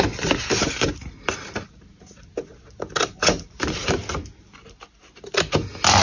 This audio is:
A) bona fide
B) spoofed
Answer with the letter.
A